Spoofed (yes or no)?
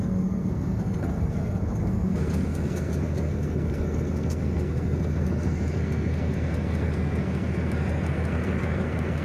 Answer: yes